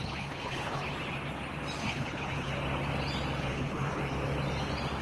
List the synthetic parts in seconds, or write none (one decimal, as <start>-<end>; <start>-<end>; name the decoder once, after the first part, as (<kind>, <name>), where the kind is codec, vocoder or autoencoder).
0.0-0.8 (codec, HILCodec); 1.8-2.5; 3.4-4.0